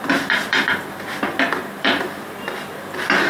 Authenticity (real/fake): fake